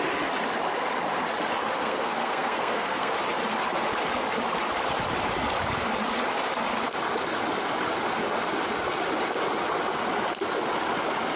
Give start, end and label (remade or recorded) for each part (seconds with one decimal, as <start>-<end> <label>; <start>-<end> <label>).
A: 0.0-1.8 recorded; 1.8-3.1 remade; 3.1-11.4 recorded